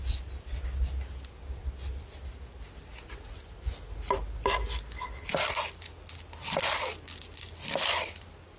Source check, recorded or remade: recorded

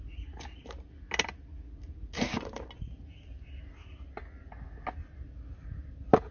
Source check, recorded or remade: recorded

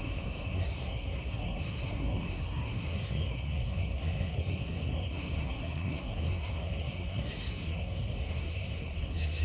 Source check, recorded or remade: remade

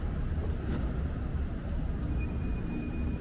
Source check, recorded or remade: remade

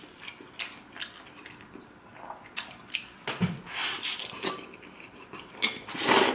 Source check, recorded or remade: recorded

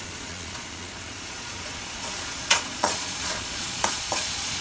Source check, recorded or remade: remade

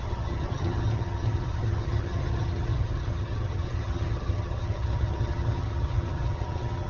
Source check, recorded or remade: remade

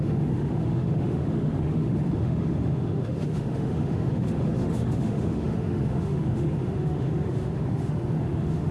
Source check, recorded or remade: remade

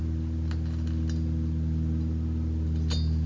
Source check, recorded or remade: recorded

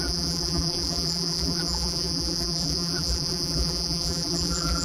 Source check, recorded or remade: remade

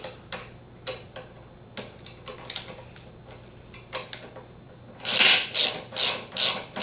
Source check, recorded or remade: recorded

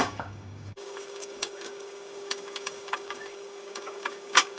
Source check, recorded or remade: remade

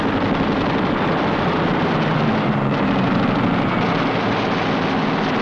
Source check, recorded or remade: recorded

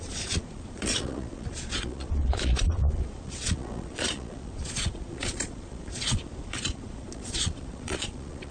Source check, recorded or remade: remade